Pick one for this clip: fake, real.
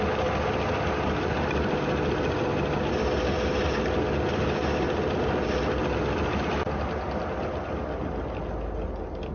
real